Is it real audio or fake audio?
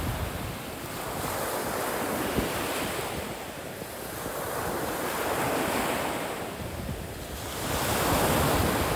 real